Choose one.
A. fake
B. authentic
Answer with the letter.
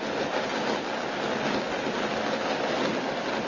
B